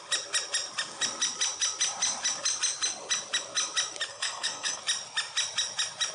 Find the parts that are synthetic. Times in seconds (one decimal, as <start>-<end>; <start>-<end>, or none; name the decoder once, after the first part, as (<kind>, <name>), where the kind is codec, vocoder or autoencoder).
4.1-4.8 (codec, SNAC)